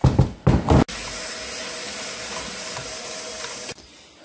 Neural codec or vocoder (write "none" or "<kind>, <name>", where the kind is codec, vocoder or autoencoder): none